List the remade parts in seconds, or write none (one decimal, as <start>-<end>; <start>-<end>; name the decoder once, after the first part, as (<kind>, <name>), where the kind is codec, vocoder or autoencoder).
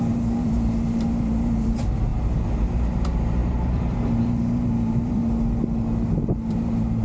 0.0-2.1 (vocoder, BigVGAN v2); 2.7-5.2; 6.5-7.0